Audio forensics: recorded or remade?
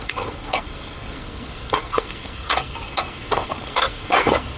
remade